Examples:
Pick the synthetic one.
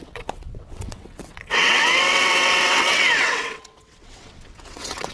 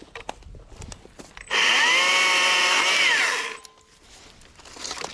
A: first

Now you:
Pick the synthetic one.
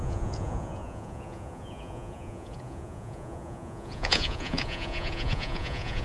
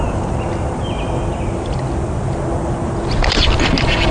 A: first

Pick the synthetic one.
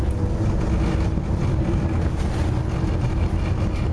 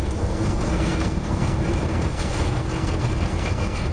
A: second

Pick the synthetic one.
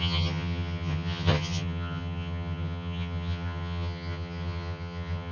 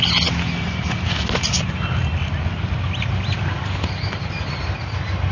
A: first